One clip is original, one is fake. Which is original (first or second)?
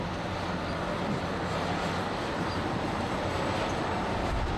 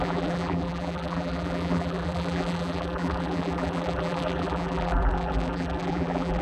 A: first